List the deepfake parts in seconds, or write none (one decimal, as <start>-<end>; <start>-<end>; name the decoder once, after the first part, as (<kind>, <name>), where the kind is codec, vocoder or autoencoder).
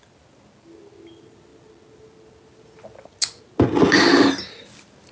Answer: none